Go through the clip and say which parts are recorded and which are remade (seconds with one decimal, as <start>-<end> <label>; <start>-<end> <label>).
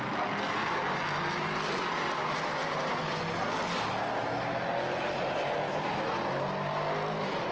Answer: 0.0-7.5 recorded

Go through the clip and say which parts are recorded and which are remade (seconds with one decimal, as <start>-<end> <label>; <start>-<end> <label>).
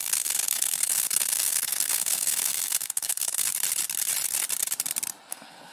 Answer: 0.0-3.5 remade; 3.5-5.3 recorded; 5.3-5.7 remade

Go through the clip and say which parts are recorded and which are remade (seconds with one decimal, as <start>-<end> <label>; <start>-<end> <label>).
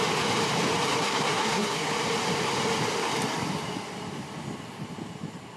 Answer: 0.0-1.0 recorded; 1.0-1.9 remade; 1.9-5.6 recorded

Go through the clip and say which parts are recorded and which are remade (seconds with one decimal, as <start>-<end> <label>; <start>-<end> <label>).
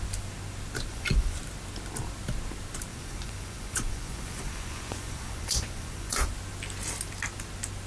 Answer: 0.0-0.9 recorded; 0.9-1.4 remade; 1.4-2.9 recorded; 2.9-6.3 remade; 6.3-7.9 recorded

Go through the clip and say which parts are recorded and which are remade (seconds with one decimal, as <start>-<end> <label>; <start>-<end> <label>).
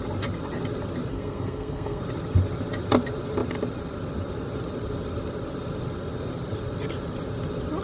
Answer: 0.0-1.1 recorded; 1.1-2.0 remade; 2.0-7.8 recorded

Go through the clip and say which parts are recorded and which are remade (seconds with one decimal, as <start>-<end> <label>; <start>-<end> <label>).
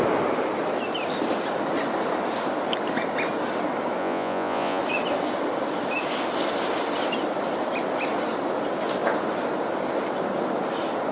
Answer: 0.0-4.0 recorded; 4.0-4.8 remade; 4.8-11.1 recorded